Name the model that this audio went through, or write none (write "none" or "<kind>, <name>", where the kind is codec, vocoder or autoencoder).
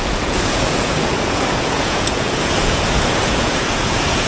vocoder, Vocos